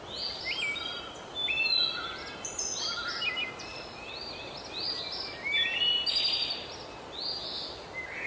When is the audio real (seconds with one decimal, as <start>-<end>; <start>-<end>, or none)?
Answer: 0.0-3.7; 4.6-8.3